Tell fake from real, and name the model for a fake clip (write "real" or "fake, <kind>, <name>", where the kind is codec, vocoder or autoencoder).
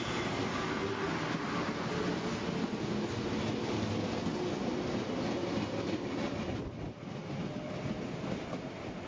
real